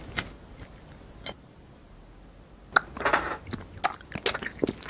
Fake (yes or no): no